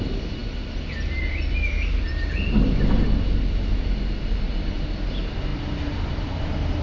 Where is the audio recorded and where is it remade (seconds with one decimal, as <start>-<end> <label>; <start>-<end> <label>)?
0.0-5.5 recorded; 5.5-6.3 remade; 6.3-6.8 recorded